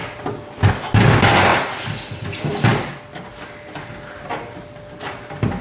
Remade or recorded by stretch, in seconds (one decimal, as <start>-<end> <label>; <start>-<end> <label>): 0.0-5.6 recorded